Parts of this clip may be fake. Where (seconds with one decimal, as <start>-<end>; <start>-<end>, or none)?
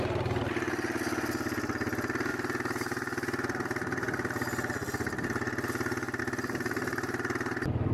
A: none